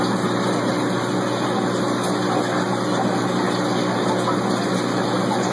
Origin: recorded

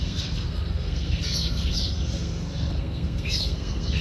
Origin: remade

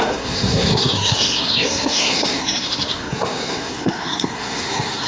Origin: remade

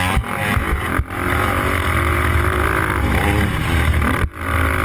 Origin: recorded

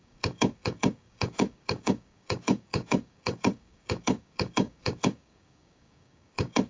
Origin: remade